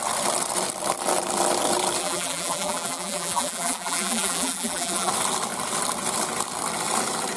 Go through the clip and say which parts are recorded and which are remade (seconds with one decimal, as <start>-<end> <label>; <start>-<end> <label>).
0.0-2.0 recorded; 2.0-5.1 remade; 5.1-7.4 recorded